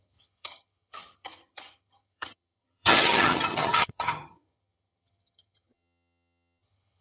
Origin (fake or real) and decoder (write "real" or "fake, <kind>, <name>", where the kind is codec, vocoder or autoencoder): fake, vocoder, HiFi-GAN